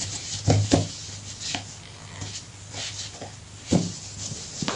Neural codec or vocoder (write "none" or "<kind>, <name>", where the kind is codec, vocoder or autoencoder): none